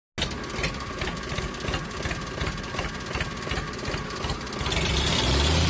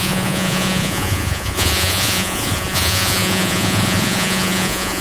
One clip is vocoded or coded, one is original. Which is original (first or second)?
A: first